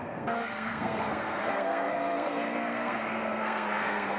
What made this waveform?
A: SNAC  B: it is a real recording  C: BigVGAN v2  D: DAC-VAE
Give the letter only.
A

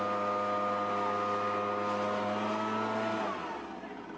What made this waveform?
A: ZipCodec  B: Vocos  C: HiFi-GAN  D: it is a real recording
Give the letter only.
D